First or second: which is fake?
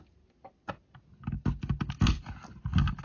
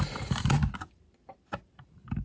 second